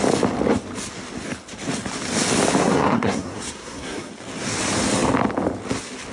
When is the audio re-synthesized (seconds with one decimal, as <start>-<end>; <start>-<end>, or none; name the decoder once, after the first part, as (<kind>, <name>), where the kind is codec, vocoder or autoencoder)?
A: 2.6-4.1 (codec, SNAC)